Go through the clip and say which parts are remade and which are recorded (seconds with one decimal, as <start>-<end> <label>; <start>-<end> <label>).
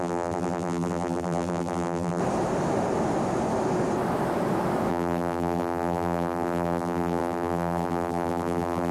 0.0-2.2 remade; 2.2-4.9 recorded; 4.9-8.9 remade